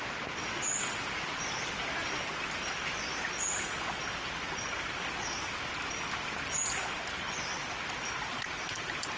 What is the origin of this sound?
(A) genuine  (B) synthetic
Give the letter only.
A